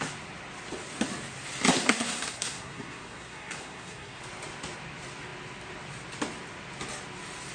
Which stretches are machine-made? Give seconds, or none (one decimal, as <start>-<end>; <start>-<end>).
1.7-4.2